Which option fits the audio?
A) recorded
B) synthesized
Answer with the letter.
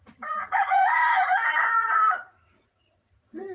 B